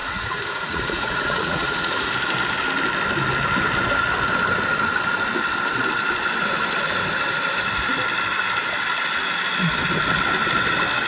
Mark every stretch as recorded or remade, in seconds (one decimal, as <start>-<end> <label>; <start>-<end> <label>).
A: 0.0-2.1 remade; 2.1-11.1 recorded